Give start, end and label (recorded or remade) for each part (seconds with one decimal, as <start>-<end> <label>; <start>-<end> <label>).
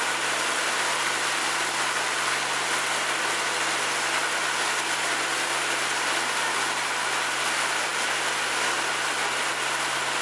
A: 0.0-10.2 recorded